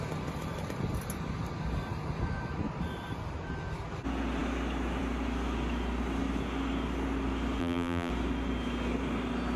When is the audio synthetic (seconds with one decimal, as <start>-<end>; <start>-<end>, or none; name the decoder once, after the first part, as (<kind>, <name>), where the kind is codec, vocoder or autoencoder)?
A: 7.6-8.1 (vocoder, BigVGAN v2)